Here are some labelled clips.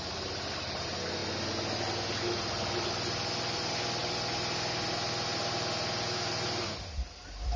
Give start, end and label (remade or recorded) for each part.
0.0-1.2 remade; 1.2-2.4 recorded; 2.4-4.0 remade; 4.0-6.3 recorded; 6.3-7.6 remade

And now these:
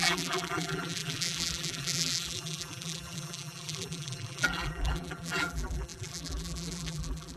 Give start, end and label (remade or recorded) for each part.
0.0-7.4 remade

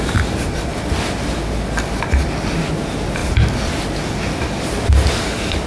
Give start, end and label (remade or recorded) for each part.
0.0-5.7 recorded

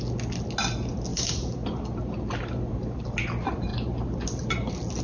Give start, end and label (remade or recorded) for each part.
0.0-1.1 recorded; 1.1-3.0 remade; 3.0-5.0 recorded

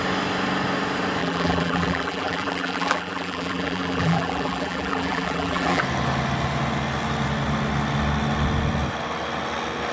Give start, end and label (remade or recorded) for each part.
0.0-1.2 recorded; 1.2-5.8 remade; 5.8-9.9 recorded

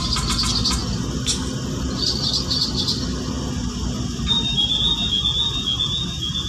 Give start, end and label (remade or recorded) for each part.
0.0-3.8 recorded; 3.8-4.8 remade; 4.8-6.5 recorded

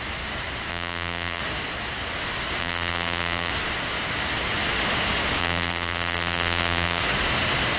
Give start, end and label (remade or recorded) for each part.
0.0-0.7 recorded; 0.7-1.4 remade; 1.4-2.6 recorded; 2.6-3.5 remade; 3.5-5.4 recorded; 5.4-7.0 remade; 7.0-7.8 recorded